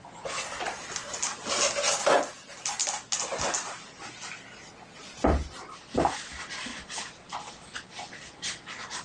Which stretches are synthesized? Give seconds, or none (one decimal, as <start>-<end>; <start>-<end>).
none